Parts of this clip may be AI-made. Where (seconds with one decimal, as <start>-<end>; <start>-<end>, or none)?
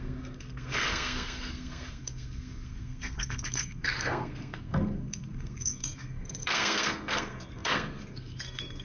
0.0-8.8